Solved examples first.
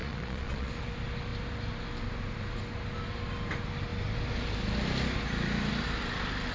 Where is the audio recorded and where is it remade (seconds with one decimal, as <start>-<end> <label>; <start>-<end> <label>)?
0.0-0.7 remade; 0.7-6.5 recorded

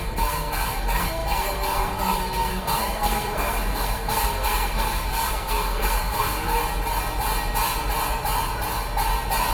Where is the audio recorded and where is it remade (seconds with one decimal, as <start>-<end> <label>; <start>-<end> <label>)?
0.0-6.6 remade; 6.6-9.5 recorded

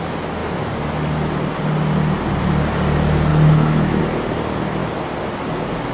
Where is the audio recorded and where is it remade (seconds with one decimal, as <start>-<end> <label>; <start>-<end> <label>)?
0.0-3.3 recorded; 3.3-4.0 remade; 4.0-5.9 recorded